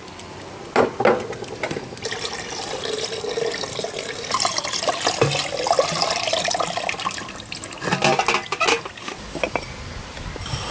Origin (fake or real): real